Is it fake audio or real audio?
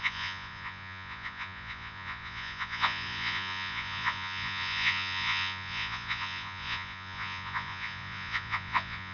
fake